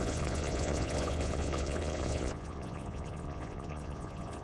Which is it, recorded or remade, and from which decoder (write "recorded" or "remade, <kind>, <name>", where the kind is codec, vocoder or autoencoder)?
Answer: remade, vocoder, Vocos